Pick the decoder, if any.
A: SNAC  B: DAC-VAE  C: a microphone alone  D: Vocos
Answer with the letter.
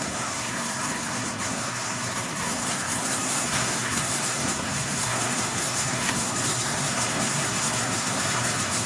A